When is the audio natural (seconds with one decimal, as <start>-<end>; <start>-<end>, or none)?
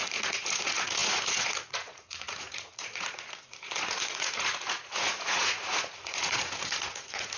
none